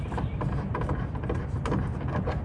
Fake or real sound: real